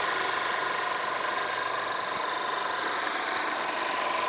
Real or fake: real